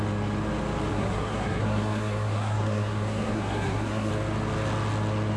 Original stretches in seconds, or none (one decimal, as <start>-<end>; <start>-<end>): 0.0-0.9; 4.1-5.4